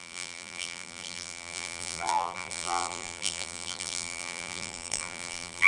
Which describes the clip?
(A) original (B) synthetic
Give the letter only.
B